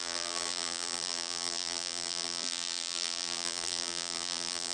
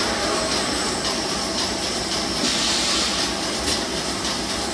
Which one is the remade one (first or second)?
first